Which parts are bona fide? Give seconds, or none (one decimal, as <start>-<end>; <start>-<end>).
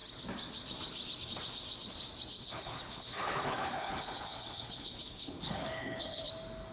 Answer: 0.0-2.3; 6.3-6.7